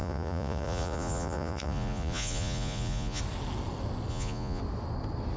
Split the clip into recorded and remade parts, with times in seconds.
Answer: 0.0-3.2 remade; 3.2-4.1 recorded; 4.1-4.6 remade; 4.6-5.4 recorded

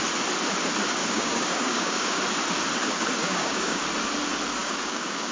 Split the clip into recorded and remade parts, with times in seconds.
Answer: 0.0-1.0 recorded; 1.0-2.2 remade; 2.2-3.2 recorded; 3.2-3.8 remade; 3.8-4.6 recorded; 4.6-5.3 remade

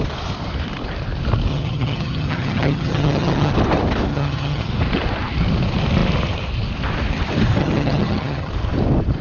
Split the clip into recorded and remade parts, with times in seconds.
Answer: 0.0-1.5 recorded; 1.5-3.5 remade; 3.5-4.1 recorded; 4.1-4.7 remade; 4.7-7.6 recorded; 7.6-8.5 remade; 8.5-9.2 recorded

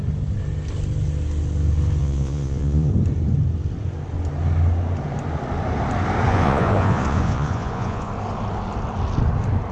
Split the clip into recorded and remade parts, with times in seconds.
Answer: 0.0-2.0 recorded; 2.0-2.9 remade; 2.9-6.3 recorded; 6.3-8.1 remade; 8.1-9.7 recorded

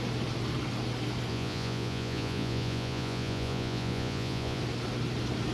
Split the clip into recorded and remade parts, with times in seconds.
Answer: 0.0-1.3 recorded; 1.3-4.6 remade; 4.6-5.5 recorded

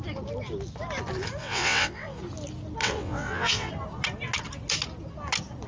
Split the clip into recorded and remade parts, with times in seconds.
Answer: 0.0-1.4 recorded; 1.4-2.2 remade; 2.2-2.8 recorded; 2.8-3.7 remade; 3.7-5.7 recorded

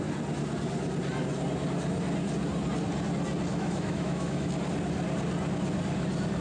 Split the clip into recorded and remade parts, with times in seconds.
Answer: 0.0-3.5 recorded; 3.5-4.5 remade; 4.5-6.4 recorded

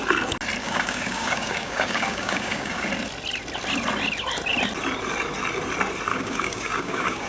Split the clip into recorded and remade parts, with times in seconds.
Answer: 0.0-0.6 recorded; 0.6-2.9 remade; 2.9-6.1 recorded; 6.1-7.3 remade